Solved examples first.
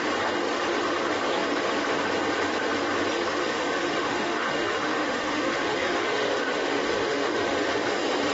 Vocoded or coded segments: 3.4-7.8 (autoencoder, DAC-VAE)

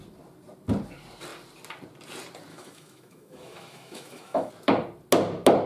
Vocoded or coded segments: 2.5-4.5 (autoencoder, DAC-VAE)

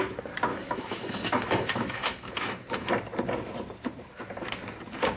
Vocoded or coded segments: 0.5-2.9 (autoencoder, DAC-VAE)

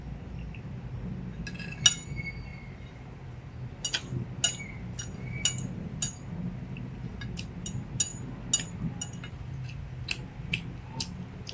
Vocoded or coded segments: none

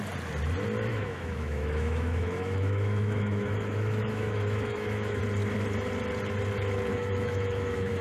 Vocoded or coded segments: 0.9-5.2 (autoencoder, DAC-VAE); 6.9-8.0

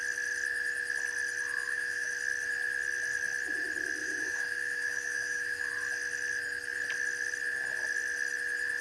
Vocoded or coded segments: 1.6-2.1 (autoencoder, DAC-VAE); 4.0-5.7